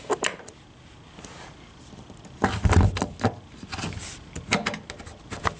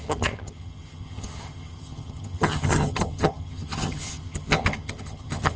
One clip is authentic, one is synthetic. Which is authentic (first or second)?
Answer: first